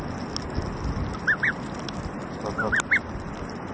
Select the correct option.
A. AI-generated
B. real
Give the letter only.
B